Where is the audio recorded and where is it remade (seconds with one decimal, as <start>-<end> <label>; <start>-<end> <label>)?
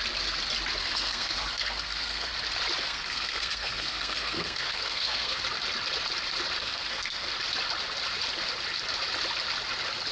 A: 0.0-0.8 recorded; 0.8-2.3 remade; 2.3-2.8 recorded; 2.8-5.4 remade; 5.4-6.6 recorded; 6.6-7.3 remade; 7.3-10.1 recorded